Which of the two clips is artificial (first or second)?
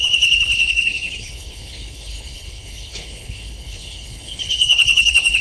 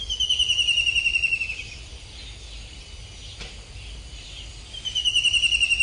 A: first